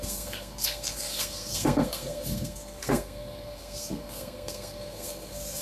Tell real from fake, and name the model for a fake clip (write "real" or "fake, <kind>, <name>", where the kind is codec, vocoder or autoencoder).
fake, codec, SNAC